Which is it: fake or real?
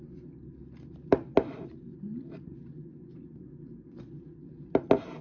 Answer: real